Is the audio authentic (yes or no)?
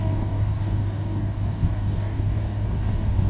no